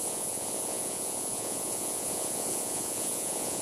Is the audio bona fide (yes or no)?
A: no